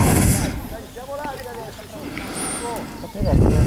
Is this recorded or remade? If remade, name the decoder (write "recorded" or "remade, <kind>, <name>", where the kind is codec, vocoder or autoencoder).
recorded